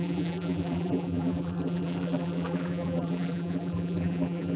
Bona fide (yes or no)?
no